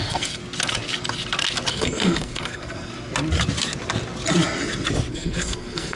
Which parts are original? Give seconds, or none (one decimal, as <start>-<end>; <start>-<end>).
0.4-1.7; 2.9-5.1

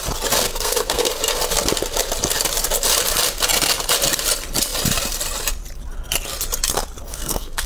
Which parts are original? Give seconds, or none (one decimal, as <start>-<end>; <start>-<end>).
0.0-0.4; 1.1-7.1

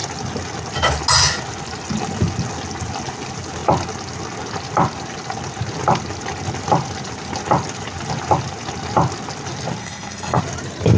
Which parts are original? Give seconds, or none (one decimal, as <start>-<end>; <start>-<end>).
0.0-9.8; 10.4-11.0

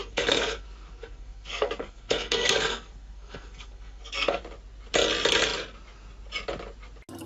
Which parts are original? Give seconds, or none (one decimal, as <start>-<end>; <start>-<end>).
4.4-7.3

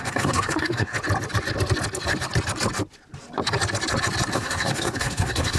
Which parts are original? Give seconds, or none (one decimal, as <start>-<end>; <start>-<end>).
0.9-4.3

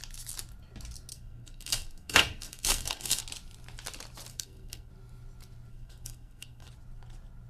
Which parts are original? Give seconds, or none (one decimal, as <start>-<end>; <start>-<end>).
0.0-1.1; 3.2-4.3; 4.9-5.7; 6.7-7.5